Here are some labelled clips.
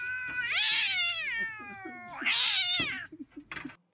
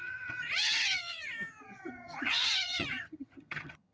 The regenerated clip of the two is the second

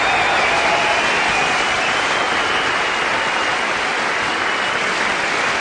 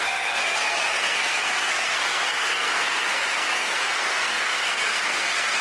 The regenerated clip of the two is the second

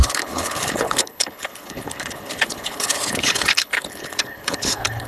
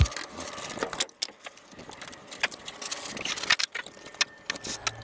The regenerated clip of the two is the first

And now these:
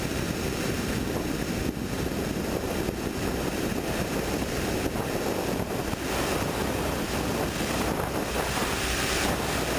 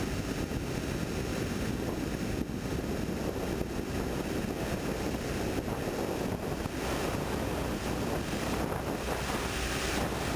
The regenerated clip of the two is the first